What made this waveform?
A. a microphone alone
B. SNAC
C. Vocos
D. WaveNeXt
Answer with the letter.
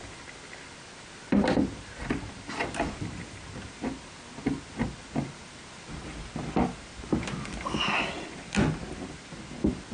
A